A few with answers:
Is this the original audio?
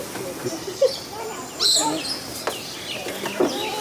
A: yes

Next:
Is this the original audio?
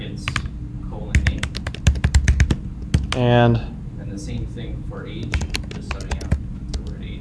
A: yes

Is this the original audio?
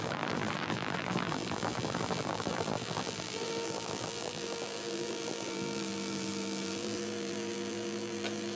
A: no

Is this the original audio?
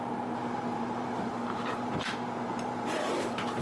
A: no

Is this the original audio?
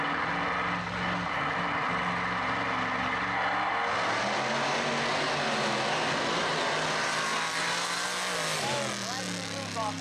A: yes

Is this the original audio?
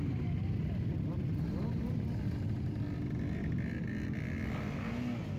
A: yes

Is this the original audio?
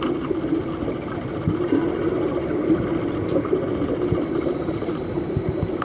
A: yes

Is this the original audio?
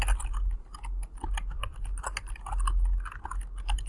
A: yes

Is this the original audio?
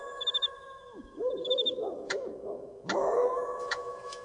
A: no